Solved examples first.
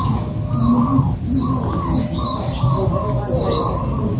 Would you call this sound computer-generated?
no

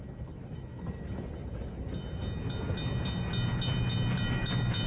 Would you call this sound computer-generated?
no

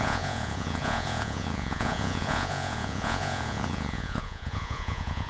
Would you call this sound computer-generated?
yes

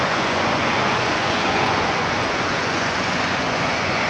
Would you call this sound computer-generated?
yes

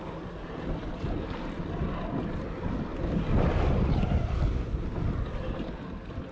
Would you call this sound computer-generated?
no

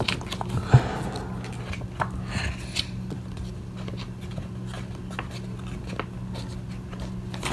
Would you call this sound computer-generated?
no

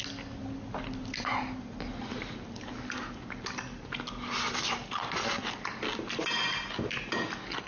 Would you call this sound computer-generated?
no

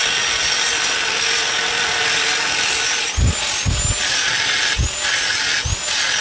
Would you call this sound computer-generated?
no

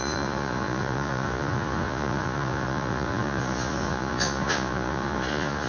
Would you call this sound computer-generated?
yes